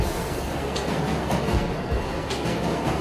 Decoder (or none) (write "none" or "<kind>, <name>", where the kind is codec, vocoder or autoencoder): codec, SNAC